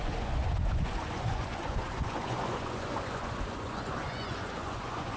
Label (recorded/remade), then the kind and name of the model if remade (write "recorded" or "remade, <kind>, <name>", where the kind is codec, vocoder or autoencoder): remade, vocoder, Vocos